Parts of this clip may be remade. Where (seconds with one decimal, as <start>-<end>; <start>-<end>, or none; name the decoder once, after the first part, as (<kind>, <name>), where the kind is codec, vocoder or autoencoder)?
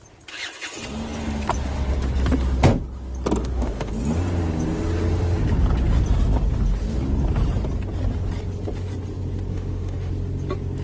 3.4-3.9 (autoencoder, DAC-VAE); 9.5-10.1